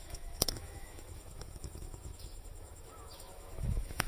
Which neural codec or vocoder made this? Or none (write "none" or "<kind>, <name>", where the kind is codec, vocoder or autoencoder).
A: autoencoder, DAC-VAE